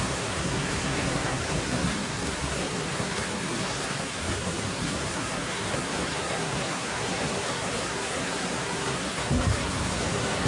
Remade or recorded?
remade